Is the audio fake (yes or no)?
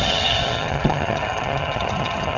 yes